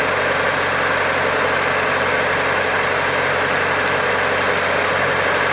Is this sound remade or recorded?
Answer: recorded